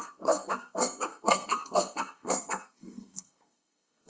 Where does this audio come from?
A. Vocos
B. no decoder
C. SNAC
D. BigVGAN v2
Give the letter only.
C